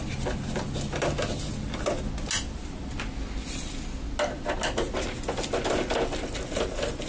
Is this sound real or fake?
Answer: real